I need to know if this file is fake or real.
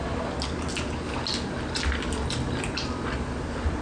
real